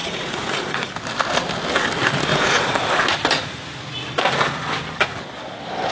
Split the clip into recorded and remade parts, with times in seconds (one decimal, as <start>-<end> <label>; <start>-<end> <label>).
0.0-0.9 remade; 0.9-2.3 recorded; 2.3-2.9 remade; 2.9-5.9 recorded